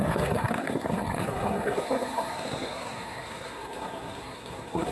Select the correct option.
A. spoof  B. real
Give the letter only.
A